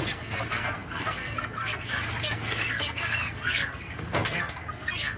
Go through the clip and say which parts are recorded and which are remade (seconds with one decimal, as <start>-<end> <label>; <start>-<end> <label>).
0.0-5.2 remade